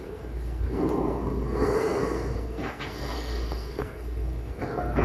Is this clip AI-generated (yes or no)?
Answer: yes